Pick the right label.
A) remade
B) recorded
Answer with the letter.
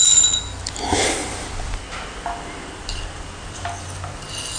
B